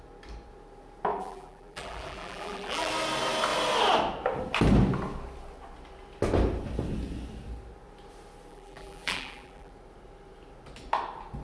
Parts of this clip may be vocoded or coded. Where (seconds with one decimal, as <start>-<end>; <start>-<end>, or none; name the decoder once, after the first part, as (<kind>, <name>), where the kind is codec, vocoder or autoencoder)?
1.1-2.9 (vocoder, BigVGAN v2); 8.5-9.7